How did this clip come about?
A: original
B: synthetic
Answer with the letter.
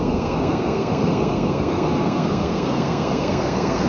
B